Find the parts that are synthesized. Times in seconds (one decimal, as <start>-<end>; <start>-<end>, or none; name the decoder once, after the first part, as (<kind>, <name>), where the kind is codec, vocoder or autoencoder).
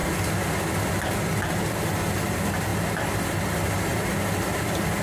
none